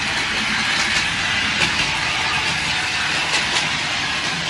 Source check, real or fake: real